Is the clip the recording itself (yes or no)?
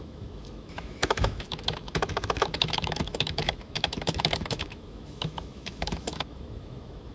no